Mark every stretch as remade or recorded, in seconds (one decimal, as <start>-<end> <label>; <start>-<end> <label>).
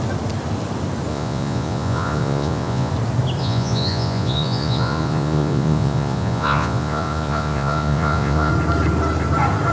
0.0-1.1 recorded; 1.1-2.9 remade; 2.9-3.4 recorded; 3.4-8.5 remade; 8.5-9.7 recorded